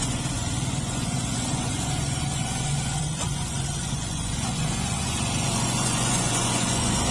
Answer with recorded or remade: remade